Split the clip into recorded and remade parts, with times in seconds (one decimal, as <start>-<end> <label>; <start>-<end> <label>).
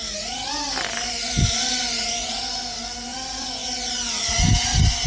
0.0-5.1 recorded